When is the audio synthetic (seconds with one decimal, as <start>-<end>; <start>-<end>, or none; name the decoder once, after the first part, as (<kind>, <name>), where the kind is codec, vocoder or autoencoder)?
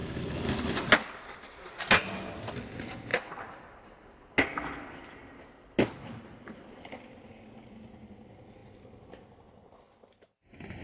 none